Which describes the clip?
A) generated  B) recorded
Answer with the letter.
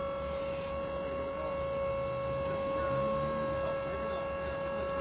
B